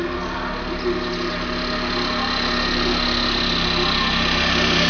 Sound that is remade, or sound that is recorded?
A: recorded